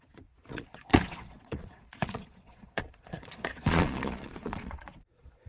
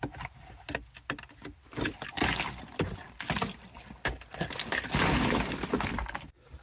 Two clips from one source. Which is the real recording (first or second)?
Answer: second